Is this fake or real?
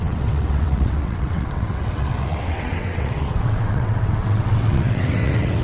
fake